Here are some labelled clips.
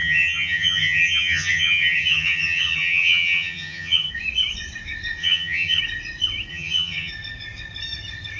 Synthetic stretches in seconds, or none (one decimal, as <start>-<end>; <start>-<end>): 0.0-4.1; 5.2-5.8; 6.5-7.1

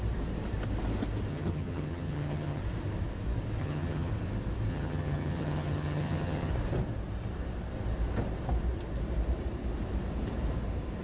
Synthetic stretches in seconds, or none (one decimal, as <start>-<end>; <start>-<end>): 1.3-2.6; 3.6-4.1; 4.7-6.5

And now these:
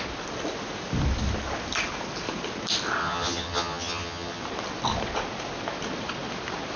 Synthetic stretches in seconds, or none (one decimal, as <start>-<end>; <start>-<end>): 3.0-4.4

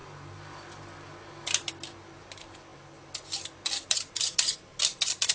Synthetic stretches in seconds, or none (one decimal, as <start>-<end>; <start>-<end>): none